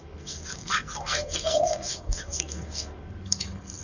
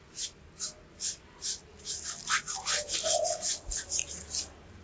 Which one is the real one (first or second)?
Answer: second